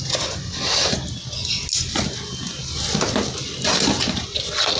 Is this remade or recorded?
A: recorded